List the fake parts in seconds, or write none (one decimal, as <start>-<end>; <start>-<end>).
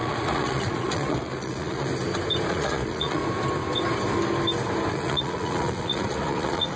0.0-1.9; 2.5-3.2; 4.9-6.8